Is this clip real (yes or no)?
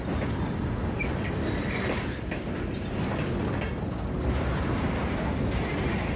yes